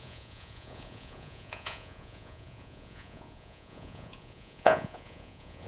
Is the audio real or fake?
fake